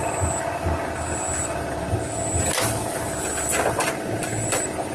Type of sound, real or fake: real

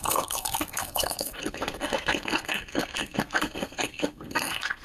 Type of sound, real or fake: fake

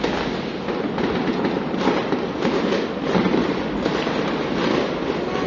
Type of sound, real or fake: real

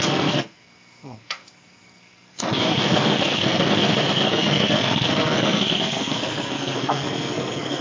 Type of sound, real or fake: fake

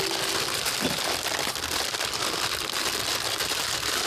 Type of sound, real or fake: real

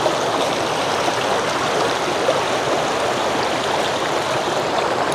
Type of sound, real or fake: real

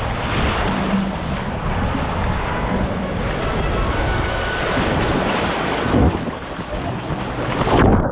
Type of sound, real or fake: real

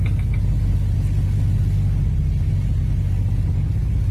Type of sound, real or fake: real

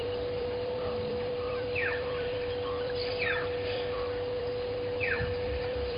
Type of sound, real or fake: fake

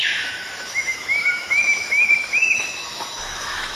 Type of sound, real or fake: fake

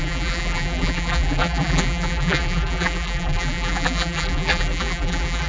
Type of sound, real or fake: fake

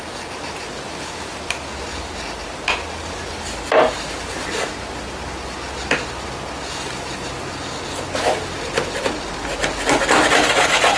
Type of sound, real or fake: real